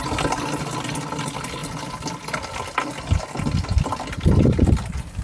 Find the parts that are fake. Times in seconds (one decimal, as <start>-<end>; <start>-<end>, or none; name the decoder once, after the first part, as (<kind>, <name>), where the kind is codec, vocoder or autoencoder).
none